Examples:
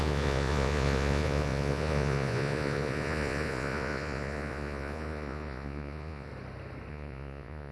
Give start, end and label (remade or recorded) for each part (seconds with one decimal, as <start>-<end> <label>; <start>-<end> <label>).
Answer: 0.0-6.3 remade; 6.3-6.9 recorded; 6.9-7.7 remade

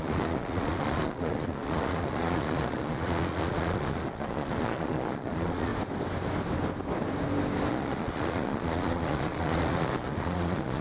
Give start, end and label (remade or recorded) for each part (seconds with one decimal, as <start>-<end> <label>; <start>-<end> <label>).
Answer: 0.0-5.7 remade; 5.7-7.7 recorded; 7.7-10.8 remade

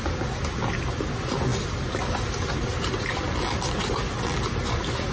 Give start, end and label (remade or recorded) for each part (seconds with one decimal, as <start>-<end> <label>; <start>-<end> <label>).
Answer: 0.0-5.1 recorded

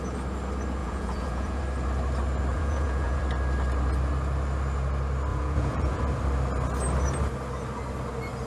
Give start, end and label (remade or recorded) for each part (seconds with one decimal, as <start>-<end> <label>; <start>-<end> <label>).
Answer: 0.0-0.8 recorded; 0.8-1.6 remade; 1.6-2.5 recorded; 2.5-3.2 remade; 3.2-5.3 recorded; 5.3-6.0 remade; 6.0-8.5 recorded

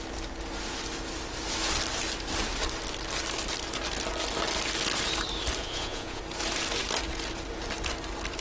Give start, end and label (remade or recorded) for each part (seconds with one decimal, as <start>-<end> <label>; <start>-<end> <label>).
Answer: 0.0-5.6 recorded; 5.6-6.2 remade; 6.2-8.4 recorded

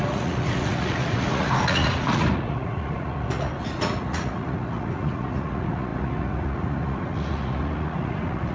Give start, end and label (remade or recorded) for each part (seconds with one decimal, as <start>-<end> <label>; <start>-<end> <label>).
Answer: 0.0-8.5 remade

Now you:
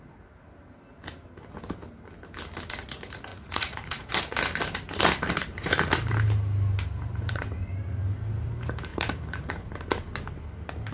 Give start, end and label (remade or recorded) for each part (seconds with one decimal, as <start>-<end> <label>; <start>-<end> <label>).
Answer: 0.0-3.3 recorded; 3.3-4.1 remade; 4.1-8.9 recorded; 8.9-9.7 remade; 9.7-10.9 recorded